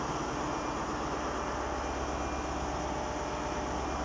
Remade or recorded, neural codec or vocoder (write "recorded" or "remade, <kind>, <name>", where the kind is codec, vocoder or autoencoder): recorded